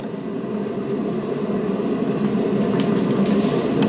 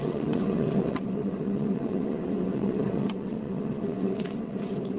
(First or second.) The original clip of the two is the first